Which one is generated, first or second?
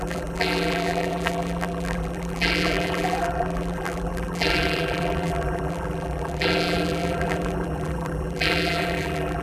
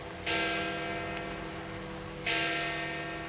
first